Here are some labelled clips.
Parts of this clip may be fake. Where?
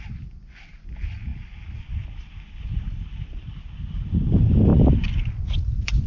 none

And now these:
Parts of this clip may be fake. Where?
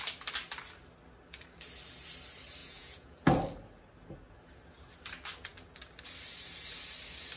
2.6-3.2 (vocoder, Vocos)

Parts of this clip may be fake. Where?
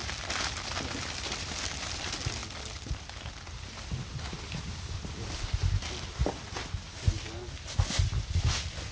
none